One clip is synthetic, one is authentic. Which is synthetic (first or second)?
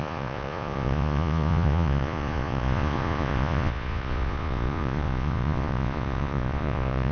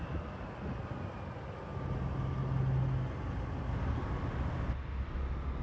first